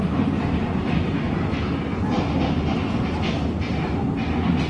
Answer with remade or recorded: recorded